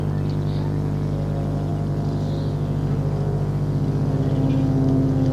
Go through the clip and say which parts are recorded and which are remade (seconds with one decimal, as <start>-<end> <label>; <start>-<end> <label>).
0.0-1.7 recorded; 1.7-2.5 remade; 2.5-5.3 recorded